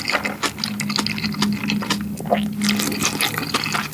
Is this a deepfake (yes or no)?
no